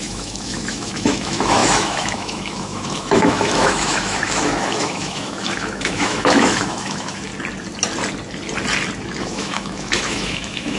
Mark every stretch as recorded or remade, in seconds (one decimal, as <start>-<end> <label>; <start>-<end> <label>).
0.0-7.3 remade; 7.3-9.2 recorded; 9.2-10.8 remade